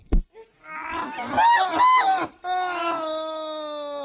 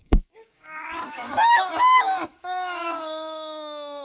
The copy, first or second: second